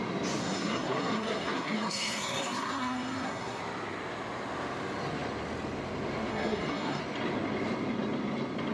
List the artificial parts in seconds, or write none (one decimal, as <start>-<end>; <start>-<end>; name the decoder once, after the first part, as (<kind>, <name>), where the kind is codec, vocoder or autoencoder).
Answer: 0.4-3.6 (codec, SNAC); 6.3-7.0